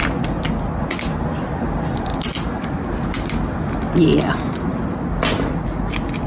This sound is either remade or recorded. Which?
remade